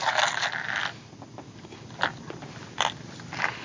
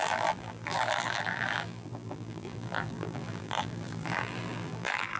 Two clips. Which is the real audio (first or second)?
first